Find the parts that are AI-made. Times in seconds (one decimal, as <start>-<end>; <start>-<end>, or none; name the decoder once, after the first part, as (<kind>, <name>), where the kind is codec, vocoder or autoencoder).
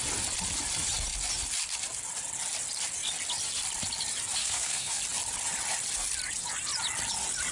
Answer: 4.4-5.0 (codec, SNAC)